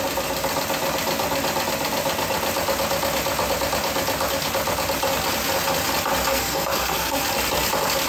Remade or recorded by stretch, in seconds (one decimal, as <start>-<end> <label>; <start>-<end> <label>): 0.0-6.3 recorded; 6.3-7.2 remade; 7.2-8.1 recorded